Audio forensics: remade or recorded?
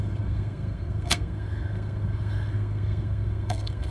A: remade